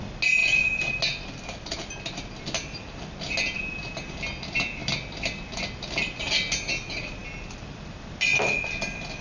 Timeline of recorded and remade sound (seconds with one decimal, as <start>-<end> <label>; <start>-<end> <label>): 0.0-9.2 recorded